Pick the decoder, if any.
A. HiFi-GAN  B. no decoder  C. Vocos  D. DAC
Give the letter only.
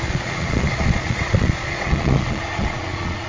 C